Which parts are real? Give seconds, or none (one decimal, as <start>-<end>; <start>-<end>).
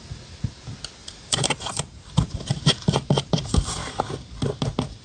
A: 0.0-1.0; 4.0-5.0